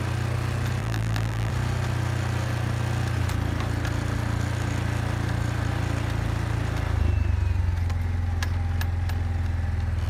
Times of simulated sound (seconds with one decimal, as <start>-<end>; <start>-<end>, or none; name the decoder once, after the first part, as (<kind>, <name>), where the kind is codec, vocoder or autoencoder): 0.8-1.5 (vocoder, BigVGAN v2)